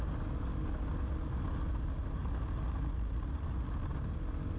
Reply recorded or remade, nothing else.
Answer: recorded